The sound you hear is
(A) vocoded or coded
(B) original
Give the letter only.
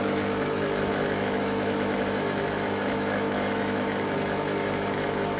A